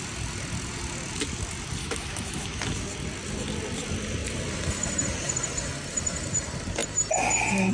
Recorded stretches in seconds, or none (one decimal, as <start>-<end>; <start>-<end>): 0.0-1.8; 2.6-7.7